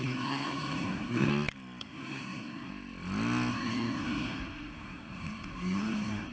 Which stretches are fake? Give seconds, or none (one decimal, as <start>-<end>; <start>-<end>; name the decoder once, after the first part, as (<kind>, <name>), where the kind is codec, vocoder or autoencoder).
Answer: 0.0-1.3 (codec, SNAC); 1.8-2.7; 3.5-6.3